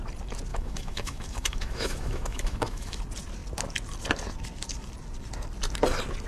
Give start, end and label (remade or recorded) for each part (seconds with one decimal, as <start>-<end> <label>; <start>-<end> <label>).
0.0-0.5 recorded; 0.5-3.0 remade; 3.0-6.3 recorded